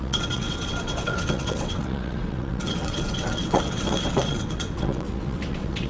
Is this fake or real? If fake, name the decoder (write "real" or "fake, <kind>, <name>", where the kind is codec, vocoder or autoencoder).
fake, vocoder, WaveNeXt